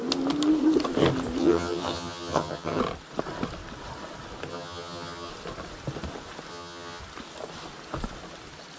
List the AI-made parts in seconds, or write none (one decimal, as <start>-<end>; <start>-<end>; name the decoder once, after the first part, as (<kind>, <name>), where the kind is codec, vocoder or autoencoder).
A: 1.4-2.8 (vocoder, HiFi-GAN); 4.5-5.3; 6.5-7.0